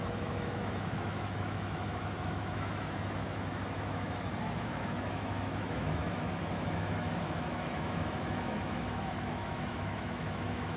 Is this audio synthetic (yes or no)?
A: yes